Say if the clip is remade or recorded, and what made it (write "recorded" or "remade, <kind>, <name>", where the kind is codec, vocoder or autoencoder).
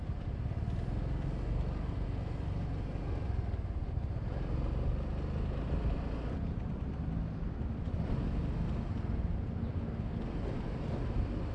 recorded